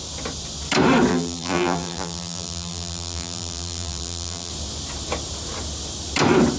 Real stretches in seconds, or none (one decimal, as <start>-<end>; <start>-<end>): 0.0-1.1; 4.5-6.6